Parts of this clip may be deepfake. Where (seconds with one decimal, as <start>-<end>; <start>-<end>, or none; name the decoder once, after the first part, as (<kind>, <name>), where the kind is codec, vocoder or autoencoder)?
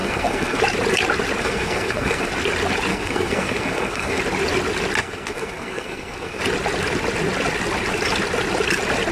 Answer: 0.0-0.6 (codec, SNAC); 1.4-2.3; 2.9-4.2; 5.0-6.4